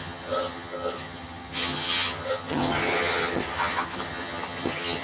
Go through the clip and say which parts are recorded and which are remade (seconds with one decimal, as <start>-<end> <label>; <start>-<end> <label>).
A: 0.0-5.0 remade

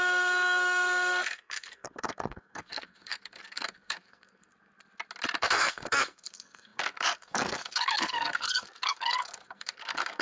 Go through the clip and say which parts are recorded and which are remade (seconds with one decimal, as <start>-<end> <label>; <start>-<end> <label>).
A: 0.0-4.5 remade; 4.5-5.4 recorded; 5.4-10.2 remade

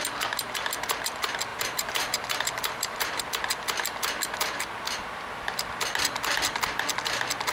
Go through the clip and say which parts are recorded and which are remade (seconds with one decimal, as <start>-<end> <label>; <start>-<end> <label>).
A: 0.0-1.5 recorded; 1.5-3.2 remade; 3.2-7.5 recorded

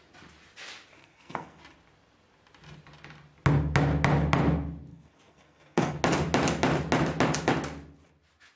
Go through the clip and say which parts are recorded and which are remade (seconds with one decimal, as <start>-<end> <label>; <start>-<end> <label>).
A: 0.0-1.0 recorded; 1.0-1.6 remade; 1.6-4.9 recorded; 4.9-6.0 remade; 6.0-8.6 recorded

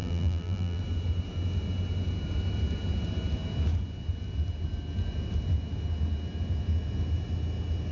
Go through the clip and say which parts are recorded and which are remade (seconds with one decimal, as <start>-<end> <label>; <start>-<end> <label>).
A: 0.0-0.8 remade; 0.8-7.9 recorded

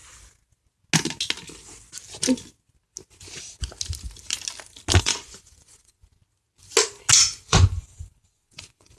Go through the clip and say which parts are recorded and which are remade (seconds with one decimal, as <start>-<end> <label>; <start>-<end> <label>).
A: 0.0-5.0 recorded; 5.0-6.2 remade; 6.2-7.3 recorded; 7.3-9.0 remade

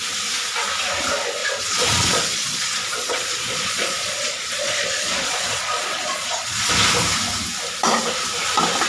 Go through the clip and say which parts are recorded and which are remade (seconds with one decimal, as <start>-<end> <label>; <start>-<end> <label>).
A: 0.0-1.4 recorded; 1.4-6.7 remade; 6.7-8.9 recorded